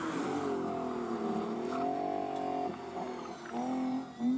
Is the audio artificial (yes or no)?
no